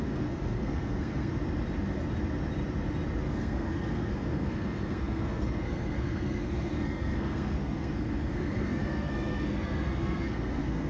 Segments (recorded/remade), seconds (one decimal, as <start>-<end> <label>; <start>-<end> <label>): 0.0-1.3 remade; 1.3-3.2 recorded; 3.2-10.9 remade